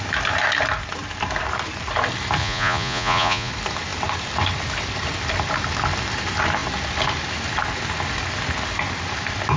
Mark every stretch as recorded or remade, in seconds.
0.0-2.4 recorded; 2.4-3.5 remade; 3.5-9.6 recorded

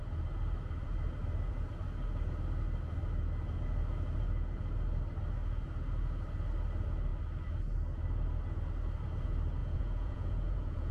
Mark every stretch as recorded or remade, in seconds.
0.0-9.6 recorded; 9.6-10.9 remade

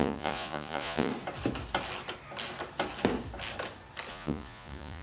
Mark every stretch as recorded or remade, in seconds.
0.0-1.1 remade; 1.1-4.1 recorded; 4.1-5.0 remade

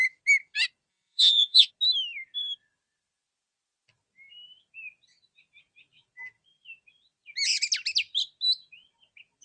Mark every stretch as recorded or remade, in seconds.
0.0-0.9 recorded; 0.9-1.7 remade; 1.7-9.4 recorded

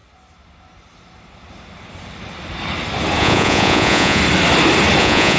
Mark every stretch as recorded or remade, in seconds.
0.0-3.2 recorded; 3.2-4.2 remade; 4.2-5.0 recorded; 5.0-5.4 remade

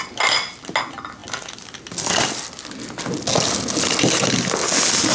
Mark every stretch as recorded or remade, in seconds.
0.0-5.1 recorded